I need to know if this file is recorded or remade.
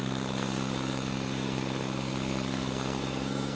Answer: remade